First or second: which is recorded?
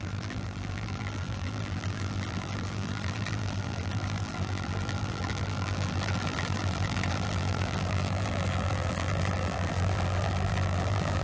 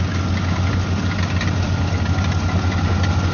second